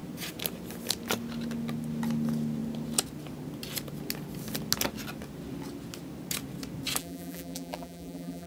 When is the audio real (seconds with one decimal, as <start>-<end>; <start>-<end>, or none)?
0.0-7.0